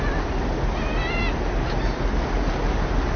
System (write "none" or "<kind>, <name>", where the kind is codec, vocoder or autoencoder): none